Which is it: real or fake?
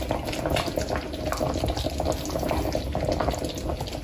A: real